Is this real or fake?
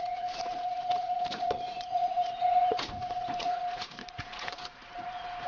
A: fake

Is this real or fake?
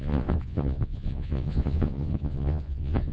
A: fake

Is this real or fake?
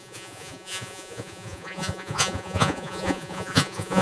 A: fake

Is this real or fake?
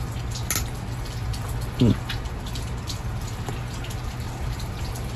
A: real